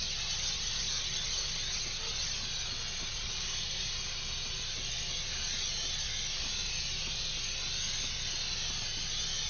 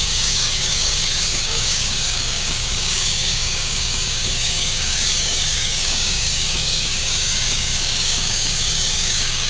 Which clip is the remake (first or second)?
second